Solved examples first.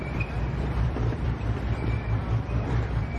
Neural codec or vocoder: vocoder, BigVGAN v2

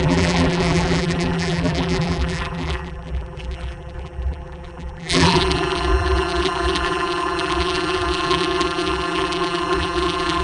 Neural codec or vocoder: vocoder, BigVGAN v2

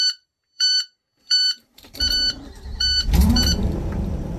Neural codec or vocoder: vocoder, BigVGAN v2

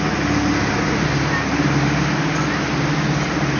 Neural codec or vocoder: none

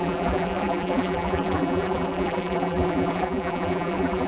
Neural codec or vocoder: vocoder, BigVGAN v2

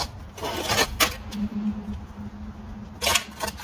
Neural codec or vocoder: none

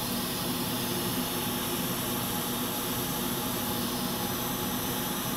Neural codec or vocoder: none